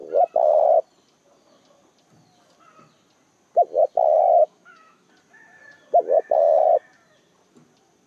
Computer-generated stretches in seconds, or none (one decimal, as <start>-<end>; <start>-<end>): 4.4-5.1